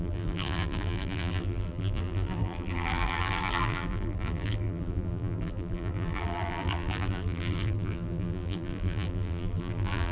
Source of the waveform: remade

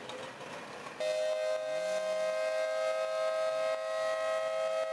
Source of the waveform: recorded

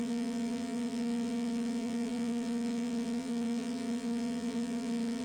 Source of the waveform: remade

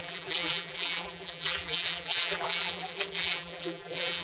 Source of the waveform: remade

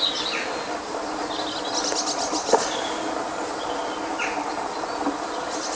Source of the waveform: recorded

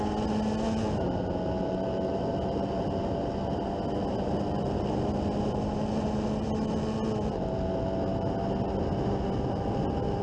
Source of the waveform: recorded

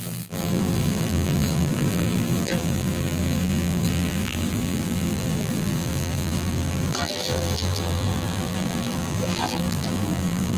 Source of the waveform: remade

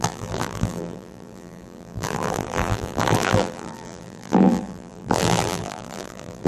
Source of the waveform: remade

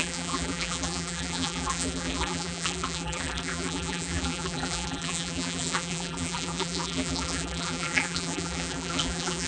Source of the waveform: remade